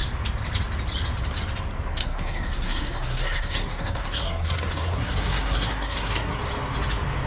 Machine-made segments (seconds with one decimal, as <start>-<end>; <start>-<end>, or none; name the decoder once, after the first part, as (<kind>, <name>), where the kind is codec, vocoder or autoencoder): 2.0-6.4 (codec, SNAC)